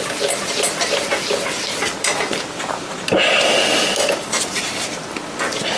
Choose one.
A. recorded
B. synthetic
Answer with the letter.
A